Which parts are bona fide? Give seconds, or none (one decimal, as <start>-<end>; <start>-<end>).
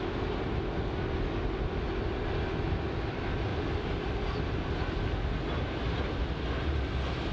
0.0-3.5; 4.7-7.3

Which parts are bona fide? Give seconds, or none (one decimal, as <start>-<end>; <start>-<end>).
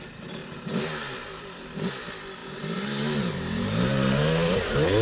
0.0-0.4; 1.9-2.4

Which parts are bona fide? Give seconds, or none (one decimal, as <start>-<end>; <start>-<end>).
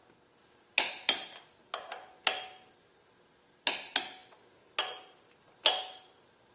0.0-6.5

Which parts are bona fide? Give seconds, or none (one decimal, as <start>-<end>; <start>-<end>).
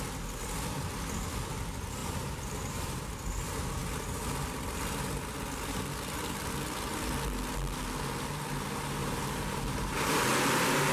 0.0-2.0; 3.0-9.0; 10.2-10.9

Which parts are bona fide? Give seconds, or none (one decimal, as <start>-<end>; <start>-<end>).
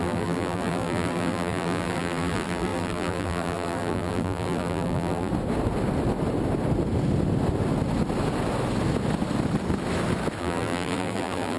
5.3-10.4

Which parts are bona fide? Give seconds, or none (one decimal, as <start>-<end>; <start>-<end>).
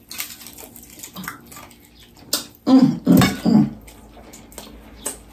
0.0-5.3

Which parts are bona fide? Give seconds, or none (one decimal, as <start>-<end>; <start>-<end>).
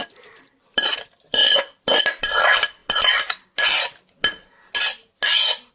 2.8-5.7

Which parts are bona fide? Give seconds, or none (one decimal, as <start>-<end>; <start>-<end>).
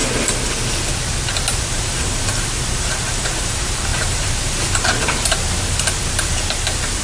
0.0-1.5